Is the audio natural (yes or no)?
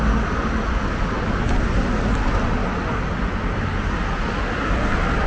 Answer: yes